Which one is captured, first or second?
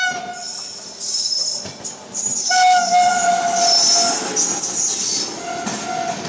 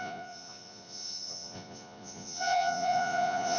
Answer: first